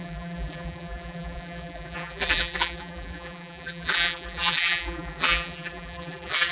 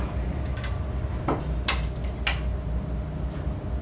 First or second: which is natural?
second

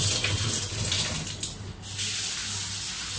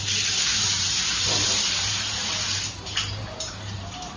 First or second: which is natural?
first